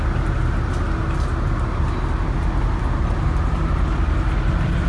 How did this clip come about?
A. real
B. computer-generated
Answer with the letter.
A